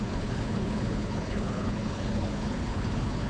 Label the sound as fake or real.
fake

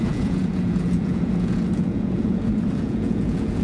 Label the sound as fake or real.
fake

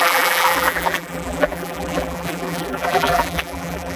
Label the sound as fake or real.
fake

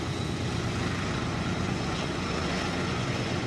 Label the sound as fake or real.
fake